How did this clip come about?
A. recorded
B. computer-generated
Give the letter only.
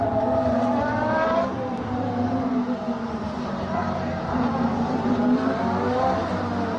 B